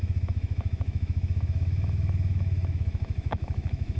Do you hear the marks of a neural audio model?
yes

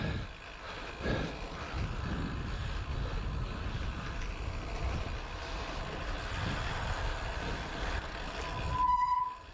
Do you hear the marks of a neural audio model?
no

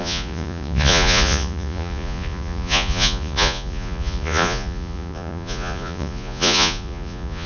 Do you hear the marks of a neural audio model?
yes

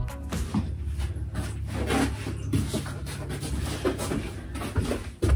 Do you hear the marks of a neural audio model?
no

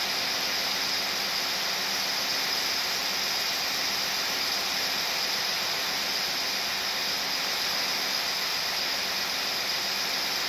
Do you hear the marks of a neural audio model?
no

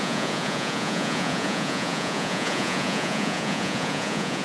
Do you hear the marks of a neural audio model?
yes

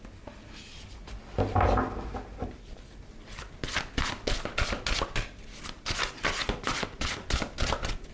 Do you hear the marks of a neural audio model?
no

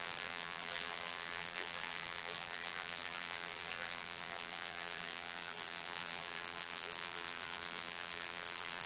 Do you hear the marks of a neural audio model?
yes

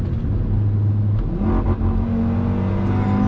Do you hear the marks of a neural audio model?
no